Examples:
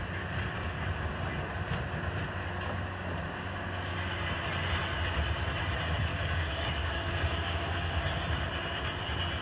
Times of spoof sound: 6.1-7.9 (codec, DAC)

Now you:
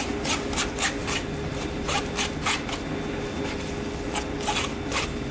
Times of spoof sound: 1.0-2.0 (vocoder, BigVGAN v2)

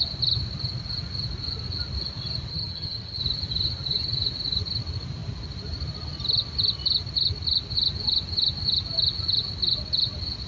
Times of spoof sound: 2.5-3.2 (vocoder, HiFi-GAN)

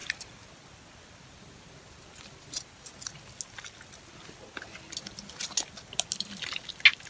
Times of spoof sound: none

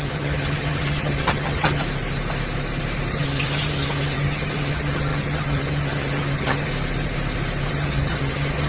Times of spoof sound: 0.0-1.8 (vocoder, HiFi-GAN); 3.1-6.7; 7.7-8.7